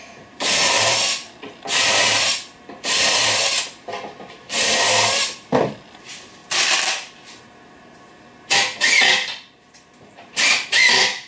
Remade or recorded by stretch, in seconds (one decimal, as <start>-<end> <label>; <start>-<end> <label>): 0.0-6.4 remade; 6.4-9.1 recorded; 9.1-11.3 remade